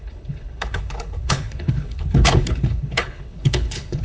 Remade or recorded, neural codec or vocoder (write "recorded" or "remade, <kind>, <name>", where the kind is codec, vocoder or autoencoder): remade, codec, HILCodec